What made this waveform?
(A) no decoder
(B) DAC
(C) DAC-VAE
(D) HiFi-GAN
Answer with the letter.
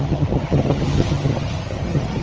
D